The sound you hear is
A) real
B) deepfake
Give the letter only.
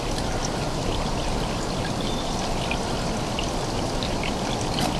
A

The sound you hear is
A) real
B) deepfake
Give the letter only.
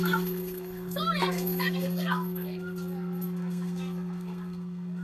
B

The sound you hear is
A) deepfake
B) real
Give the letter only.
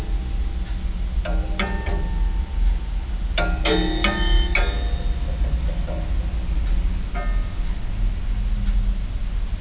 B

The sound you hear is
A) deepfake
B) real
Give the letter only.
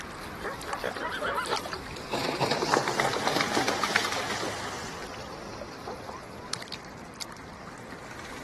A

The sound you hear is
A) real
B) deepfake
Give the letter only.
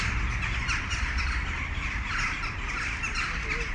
A